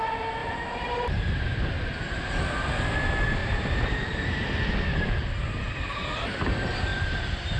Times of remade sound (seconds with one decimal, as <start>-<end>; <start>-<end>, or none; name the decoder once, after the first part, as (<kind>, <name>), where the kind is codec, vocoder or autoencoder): 0.4-1.6 (vocoder, BigVGAN v2); 3.4-4.7; 6.9-7.6